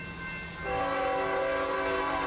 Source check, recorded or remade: recorded